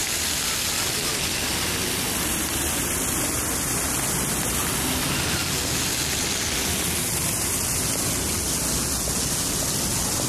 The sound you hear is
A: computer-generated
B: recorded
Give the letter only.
B